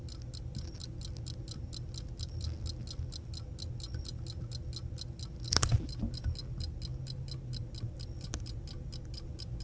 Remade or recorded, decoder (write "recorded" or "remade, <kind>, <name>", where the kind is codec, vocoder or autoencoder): recorded